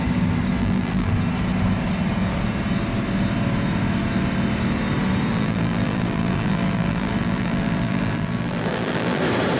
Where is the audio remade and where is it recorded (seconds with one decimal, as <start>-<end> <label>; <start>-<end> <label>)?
0.0-0.6 recorded; 0.6-1.1 remade; 1.1-5.3 recorded; 5.3-9.2 remade; 9.2-9.6 recorded